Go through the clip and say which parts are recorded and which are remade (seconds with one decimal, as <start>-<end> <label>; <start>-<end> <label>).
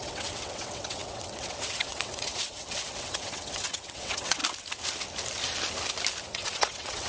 0.0-4.4 remade; 4.4-6.2 recorded; 6.2-7.1 remade